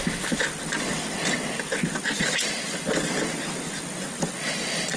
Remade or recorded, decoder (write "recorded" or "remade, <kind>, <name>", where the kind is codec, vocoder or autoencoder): recorded